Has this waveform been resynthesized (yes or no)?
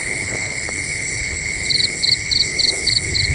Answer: yes